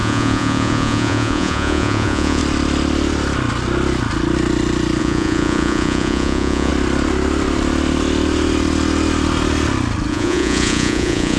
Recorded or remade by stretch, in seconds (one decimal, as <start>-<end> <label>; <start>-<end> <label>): 0.0-2.4 remade; 2.4-5.0 recorded; 5.0-6.7 remade; 6.7-10.1 recorded; 10.1-11.4 remade